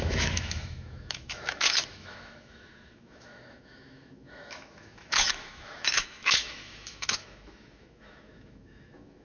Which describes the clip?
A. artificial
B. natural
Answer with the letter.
A